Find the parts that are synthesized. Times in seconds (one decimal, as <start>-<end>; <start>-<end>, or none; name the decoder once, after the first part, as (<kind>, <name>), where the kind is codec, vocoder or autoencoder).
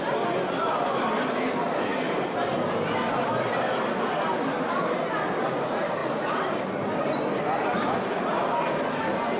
6.0-6.6 (vocoder, BigVGAN v2)